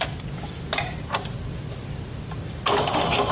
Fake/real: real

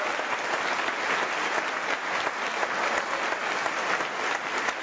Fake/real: real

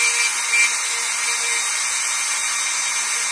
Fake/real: real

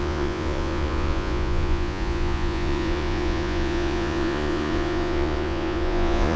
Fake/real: fake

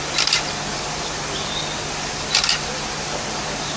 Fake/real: fake